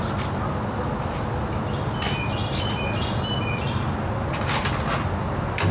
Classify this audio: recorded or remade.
recorded